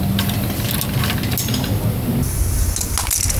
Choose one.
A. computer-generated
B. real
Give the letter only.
B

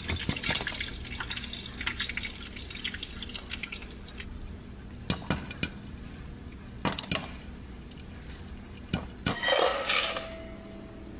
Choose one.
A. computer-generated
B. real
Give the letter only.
B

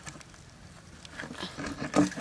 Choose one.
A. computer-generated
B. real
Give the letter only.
B